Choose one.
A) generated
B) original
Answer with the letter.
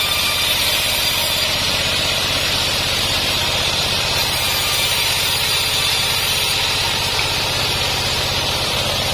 A